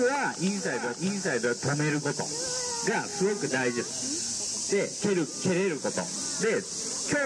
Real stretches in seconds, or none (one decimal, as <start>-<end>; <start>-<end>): 0.0-7.3